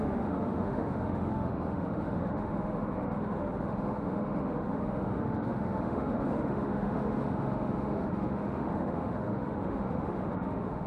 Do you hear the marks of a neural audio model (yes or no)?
yes